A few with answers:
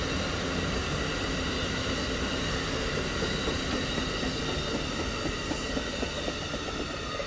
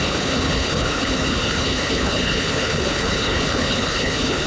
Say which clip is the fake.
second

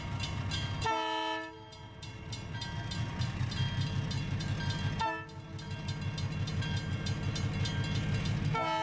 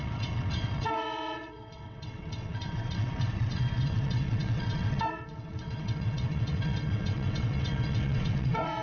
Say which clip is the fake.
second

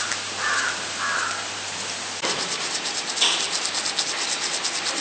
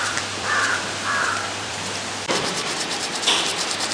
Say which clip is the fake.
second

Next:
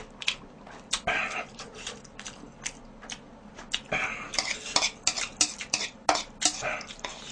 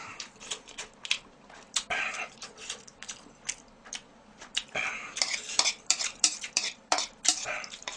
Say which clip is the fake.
second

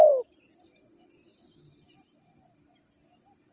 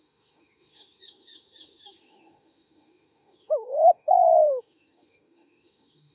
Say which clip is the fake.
second